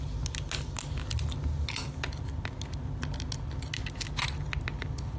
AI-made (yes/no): no